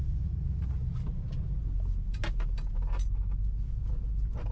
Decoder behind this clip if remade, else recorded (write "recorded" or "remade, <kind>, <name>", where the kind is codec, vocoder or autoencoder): recorded